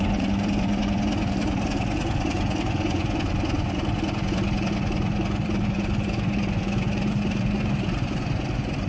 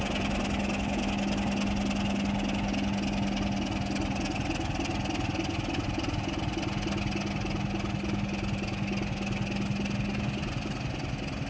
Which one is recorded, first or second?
second